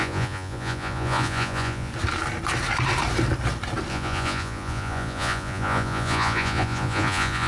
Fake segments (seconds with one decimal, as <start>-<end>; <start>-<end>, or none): 0.0-1.9; 3.9-7.5